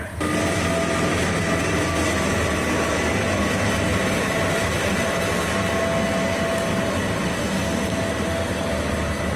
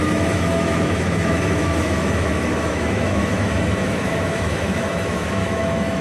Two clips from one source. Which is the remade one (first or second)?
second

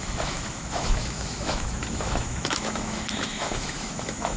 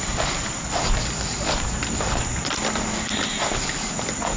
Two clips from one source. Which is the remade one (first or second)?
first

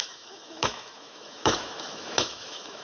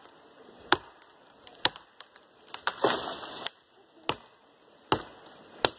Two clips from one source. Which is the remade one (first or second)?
first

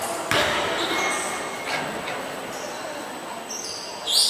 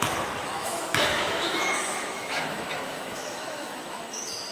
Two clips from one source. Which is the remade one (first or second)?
second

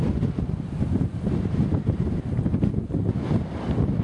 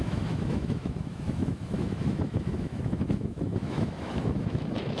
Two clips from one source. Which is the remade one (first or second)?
second